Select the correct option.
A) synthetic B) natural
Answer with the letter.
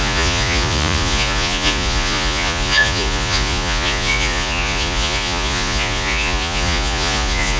A